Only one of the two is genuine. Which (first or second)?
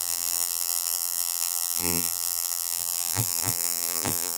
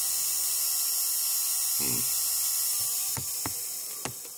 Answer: second